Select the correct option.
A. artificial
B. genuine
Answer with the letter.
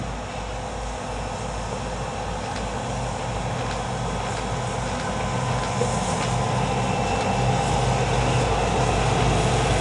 B